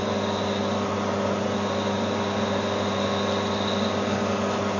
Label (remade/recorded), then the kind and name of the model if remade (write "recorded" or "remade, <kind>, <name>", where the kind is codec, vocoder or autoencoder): recorded